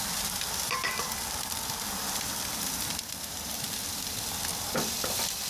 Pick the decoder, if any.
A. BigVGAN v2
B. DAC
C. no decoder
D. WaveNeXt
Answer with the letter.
A